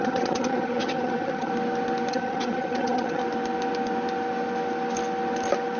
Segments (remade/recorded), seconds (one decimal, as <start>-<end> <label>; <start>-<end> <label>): 0.0-1.5 remade; 1.5-2.1 recorded; 2.1-3.2 remade; 3.2-5.8 recorded